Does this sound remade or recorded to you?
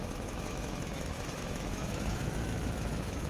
remade